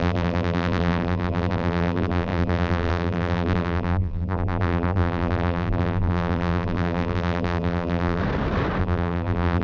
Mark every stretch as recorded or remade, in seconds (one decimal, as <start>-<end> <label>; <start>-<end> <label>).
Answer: 0.0-8.2 remade; 8.2-8.8 recorded; 8.8-9.6 remade